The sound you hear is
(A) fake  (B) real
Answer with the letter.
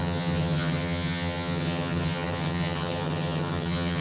A